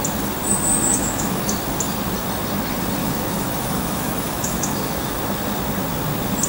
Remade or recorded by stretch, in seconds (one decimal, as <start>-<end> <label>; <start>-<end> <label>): 0.0-0.9 recorded; 0.9-1.4 remade; 1.4-3.0 recorded; 3.0-5.2 remade; 5.2-6.5 recorded